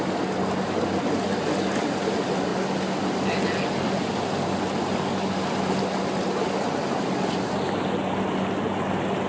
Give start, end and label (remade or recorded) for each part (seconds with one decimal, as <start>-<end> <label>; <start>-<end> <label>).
0.0-9.3 recorded